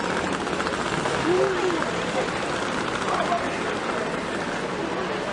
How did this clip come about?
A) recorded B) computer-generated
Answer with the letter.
A